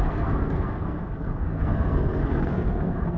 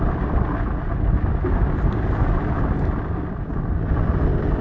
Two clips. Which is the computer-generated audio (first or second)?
first